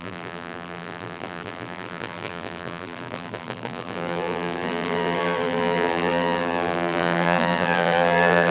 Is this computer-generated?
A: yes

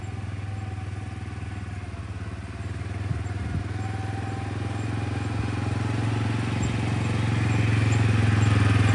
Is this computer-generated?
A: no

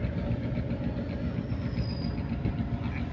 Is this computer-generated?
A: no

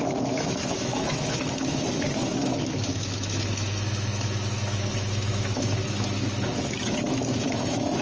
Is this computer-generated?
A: yes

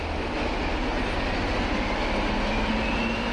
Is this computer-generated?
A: no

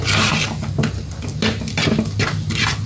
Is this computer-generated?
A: no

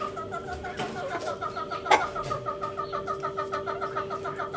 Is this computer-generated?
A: no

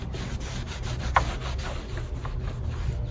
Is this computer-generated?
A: no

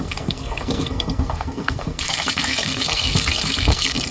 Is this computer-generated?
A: yes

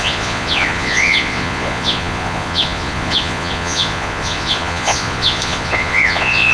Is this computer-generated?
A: yes